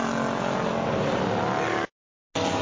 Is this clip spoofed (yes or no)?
no